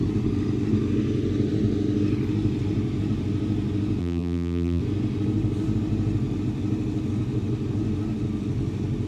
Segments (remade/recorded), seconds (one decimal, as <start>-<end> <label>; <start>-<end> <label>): 0.0-4.0 recorded; 4.0-4.8 remade; 4.8-9.1 recorded

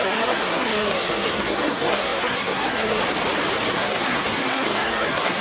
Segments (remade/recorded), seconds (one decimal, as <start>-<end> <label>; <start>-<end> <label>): 0.0-3.0 remade; 3.0-3.7 recorded; 3.7-5.4 remade